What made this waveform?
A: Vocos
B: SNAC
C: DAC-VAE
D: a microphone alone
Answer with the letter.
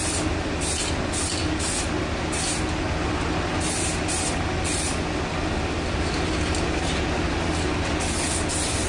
D